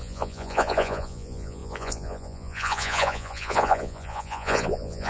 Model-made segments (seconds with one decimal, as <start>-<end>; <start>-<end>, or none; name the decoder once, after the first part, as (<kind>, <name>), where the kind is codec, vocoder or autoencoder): 0.0-5.1 (vocoder, Vocos)